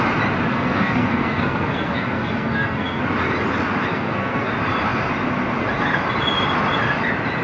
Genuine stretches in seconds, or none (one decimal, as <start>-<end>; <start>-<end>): 0.0-0.5; 3.0-3.9; 4.5-7.4